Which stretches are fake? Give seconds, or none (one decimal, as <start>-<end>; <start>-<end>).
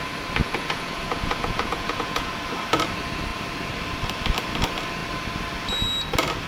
0.4-2.3